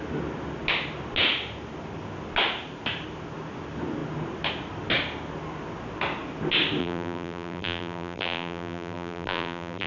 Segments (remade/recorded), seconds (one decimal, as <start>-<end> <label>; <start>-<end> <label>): 0.0-6.8 recorded; 6.8-9.9 remade